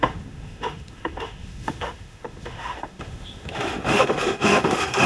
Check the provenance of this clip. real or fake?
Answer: fake